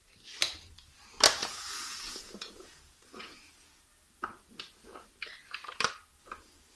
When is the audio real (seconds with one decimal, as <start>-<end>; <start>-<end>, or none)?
0.0-1.4; 3.5-6.8